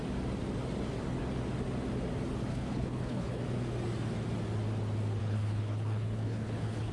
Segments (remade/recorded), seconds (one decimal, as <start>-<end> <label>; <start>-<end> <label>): 0.0-2.5 recorded; 2.5-3.4 remade; 3.4-5.2 recorded; 5.2-6.9 remade